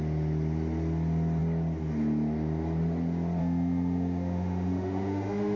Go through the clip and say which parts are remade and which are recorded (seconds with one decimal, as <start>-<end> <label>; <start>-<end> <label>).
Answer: 0.0-3.4 recorded; 3.4-5.6 remade